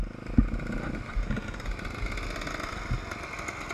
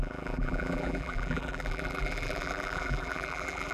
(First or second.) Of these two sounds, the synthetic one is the second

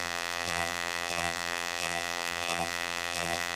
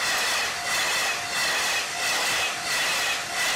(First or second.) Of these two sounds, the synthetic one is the first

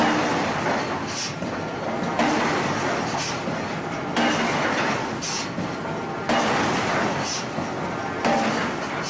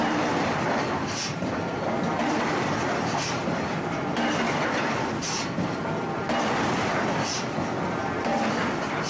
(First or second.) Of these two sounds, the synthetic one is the second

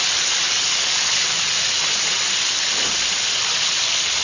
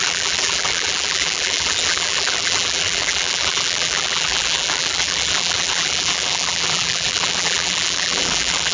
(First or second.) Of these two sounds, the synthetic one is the second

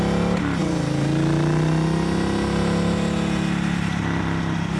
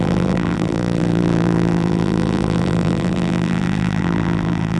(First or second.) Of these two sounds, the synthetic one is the second